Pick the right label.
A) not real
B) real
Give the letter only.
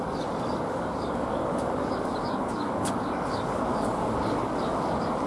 A